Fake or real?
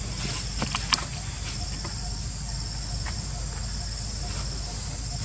real